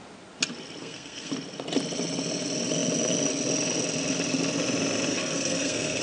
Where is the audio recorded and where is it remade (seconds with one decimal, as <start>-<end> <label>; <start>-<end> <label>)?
0.0-0.8 recorded; 0.8-1.3 remade; 1.3-5.1 recorded; 5.1-6.0 remade